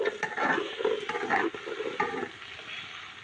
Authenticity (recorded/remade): recorded